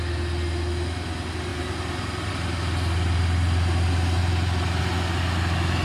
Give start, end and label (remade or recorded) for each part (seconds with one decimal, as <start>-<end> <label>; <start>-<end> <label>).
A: 0.0-1.5 recorded; 1.5-2.3 remade; 2.3-4.2 recorded; 4.2-4.8 remade; 4.8-5.8 recorded

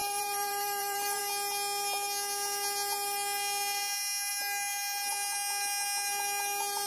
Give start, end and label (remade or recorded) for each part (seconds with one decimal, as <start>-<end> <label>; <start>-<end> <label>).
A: 0.0-1.2 remade; 1.2-6.9 recorded

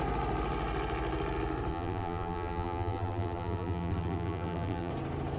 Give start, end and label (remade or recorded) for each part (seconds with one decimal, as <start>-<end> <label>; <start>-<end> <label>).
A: 0.0-1.7 recorded; 1.7-4.9 remade; 4.9-5.4 recorded

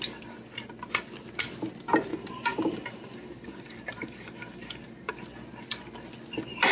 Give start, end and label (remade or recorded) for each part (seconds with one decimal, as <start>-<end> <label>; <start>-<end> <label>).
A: 0.0-2.1 recorded; 2.1-5.1 remade; 5.1-6.7 recorded

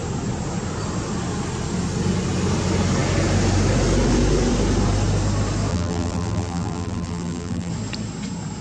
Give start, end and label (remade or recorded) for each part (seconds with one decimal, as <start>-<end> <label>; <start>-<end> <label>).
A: 0.0-5.7 recorded; 5.7-7.7 remade; 7.7-8.6 recorded

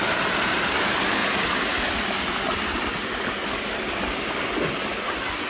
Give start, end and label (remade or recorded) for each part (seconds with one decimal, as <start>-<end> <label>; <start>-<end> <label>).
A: 0.0-1.2 recorded; 1.2-4.5 remade; 4.5-5.5 recorded

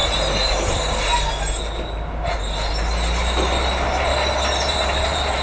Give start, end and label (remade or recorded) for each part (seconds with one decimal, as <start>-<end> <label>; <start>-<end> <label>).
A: 0.0-0.7 recorded; 0.7-1.1 remade; 1.1-4.3 recorded; 4.3-5.4 remade

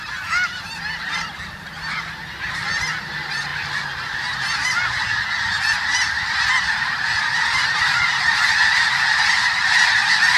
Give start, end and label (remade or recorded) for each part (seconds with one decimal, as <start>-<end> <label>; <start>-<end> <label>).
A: 0.0-10.4 recorded